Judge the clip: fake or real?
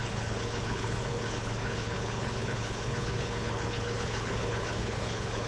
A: fake